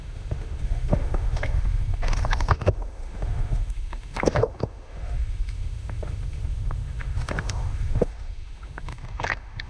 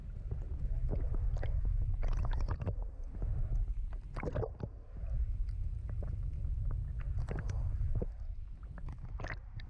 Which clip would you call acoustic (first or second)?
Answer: second